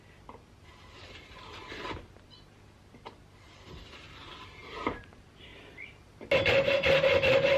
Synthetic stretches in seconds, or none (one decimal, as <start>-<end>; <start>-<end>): none